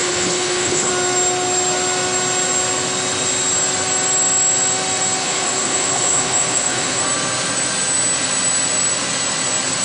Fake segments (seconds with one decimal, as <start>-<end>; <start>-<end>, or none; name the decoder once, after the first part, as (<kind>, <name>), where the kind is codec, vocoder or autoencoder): 0.0-0.9 (codec, HILCodec); 5.2-7.0